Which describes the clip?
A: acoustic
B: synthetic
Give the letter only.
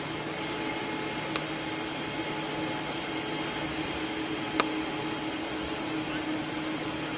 A